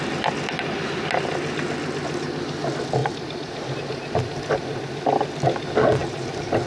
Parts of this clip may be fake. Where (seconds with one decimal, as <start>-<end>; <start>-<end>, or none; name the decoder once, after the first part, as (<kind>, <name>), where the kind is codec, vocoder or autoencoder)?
3.0-3.7 (vocoder, BigVGAN v2); 6.0-6.7